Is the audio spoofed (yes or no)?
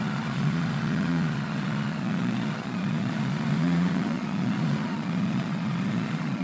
yes